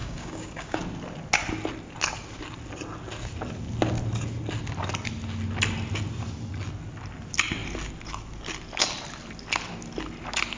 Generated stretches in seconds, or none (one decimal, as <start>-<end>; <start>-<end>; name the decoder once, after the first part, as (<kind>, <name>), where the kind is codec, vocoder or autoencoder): 0.0-0.8 (codec, DAC)